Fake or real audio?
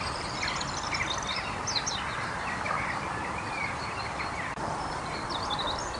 real